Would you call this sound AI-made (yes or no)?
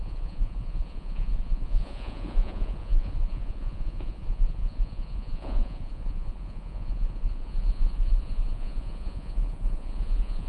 yes